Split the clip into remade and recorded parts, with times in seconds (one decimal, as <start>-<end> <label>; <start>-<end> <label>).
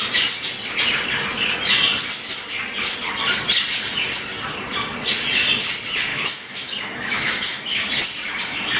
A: 0.0-6.1 recorded; 6.1-7.9 remade; 7.9-8.8 recorded